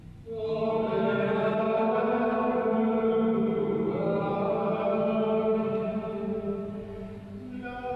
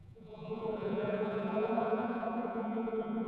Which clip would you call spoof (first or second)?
second